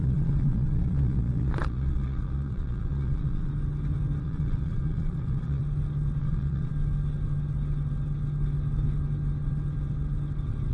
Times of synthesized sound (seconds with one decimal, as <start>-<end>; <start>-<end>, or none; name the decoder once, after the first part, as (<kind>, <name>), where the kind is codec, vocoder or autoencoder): 0.0-3.5 (vocoder, Vocos); 4.2-5.6; 6.2-6.7